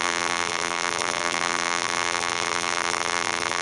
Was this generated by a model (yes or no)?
yes